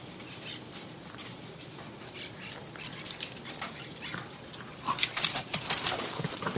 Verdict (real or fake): fake